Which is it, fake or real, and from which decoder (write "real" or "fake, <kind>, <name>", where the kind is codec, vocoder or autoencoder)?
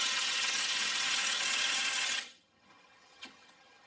fake, vocoder, HiFi-GAN